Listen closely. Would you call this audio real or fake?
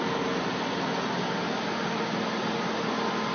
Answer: real